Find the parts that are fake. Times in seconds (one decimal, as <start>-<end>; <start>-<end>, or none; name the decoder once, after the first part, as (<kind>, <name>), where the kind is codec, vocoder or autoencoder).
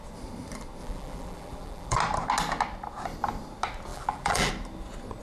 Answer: 0.8-2.0 (vocoder, BigVGAN v2); 3.9-4.5